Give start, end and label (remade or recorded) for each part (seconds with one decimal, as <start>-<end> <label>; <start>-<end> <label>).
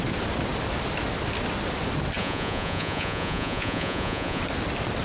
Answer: 0.0-2.2 recorded; 2.2-4.4 remade; 4.4-5.0 recorded